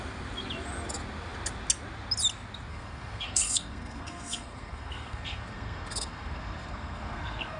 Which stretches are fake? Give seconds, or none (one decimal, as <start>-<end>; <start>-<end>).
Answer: 2.7-7.6